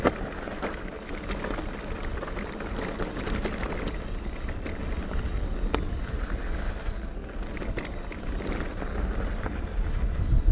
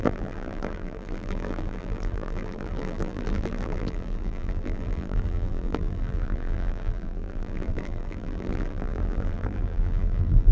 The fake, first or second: second